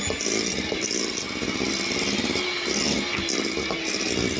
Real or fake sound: real